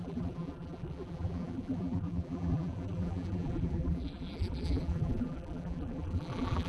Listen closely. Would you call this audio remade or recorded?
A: remade